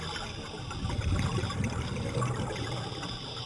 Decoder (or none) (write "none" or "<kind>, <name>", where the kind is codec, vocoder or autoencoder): none